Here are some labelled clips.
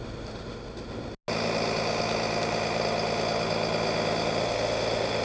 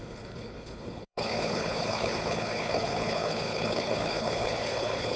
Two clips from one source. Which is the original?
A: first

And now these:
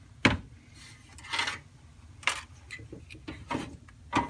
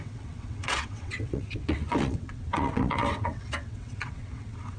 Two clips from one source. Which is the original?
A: first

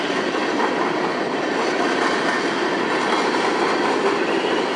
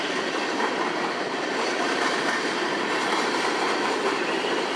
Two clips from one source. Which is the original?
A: first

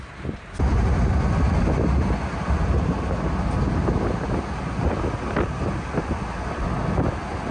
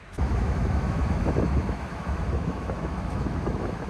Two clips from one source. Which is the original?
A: first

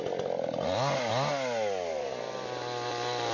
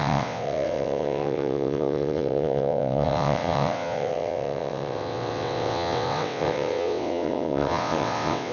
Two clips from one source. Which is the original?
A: first